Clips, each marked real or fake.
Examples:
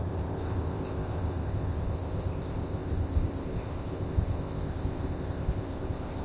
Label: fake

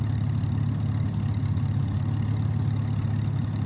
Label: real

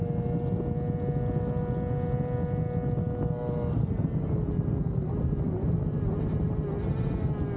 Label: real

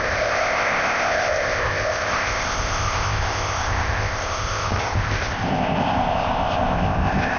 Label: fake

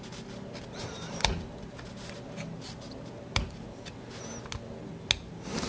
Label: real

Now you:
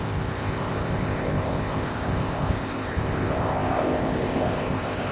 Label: fake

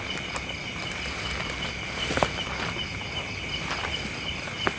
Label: real